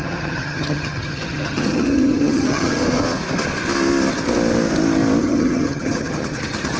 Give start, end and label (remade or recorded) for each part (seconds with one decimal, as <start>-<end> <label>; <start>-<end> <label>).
0.0-2.8 remade; 2.8-5.2 recorded; 5.2-6.8 remade